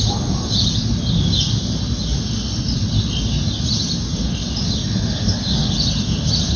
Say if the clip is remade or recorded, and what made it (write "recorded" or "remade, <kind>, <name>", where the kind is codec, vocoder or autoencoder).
recorded